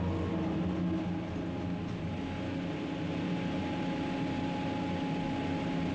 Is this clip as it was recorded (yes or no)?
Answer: yes